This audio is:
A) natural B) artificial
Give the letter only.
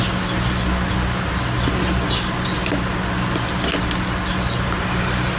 A